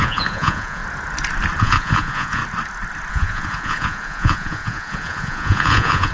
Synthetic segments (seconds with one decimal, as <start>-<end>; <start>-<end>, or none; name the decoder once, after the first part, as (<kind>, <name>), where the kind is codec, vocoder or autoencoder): 0.0-0.8 (vocoder, Vocos); 1.6-2.4; 3.1-6.1